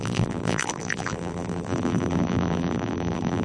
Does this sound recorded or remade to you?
remade